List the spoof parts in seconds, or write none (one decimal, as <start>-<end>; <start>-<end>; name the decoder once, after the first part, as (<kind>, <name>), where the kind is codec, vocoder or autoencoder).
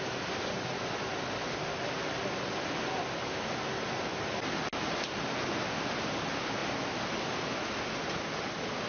none